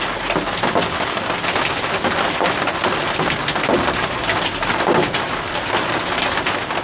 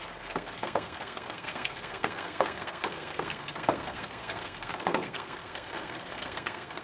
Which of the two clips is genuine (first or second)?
first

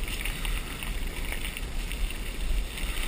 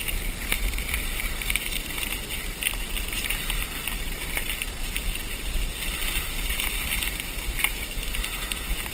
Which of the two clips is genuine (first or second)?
first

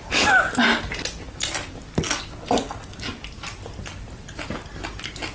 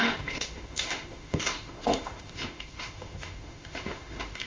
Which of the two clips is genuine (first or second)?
first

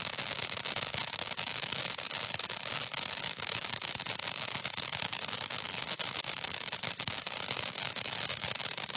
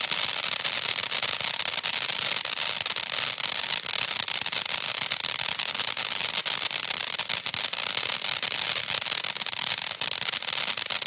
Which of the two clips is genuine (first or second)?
second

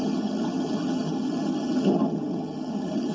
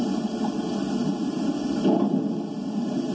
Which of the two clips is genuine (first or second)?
second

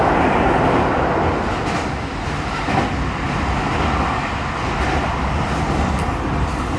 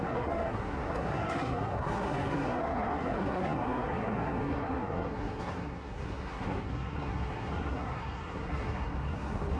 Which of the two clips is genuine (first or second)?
first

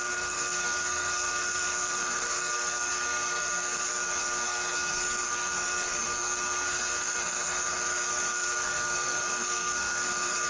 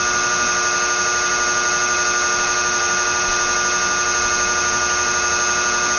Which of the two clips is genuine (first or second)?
second